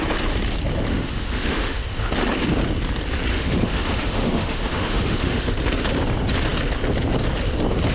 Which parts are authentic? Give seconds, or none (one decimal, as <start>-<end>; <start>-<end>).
0.0-0.9; 2.1-3.3; 5.6-7.9